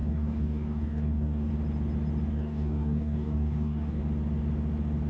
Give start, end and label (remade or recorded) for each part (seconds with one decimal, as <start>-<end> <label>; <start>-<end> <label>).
0.0-1.5 remade; 1.5-2.3 recorded; 2.3-4.0 remade; 4.0-5.1 recorded